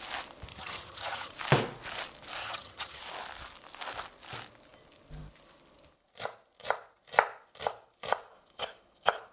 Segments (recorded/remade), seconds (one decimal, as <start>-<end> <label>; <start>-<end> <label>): 0.0-0.5 recorded; 0.5-1.3 remade; 1.3-2.4 recorded; 2.4-3.0 remade; 3.0-9.3 recorded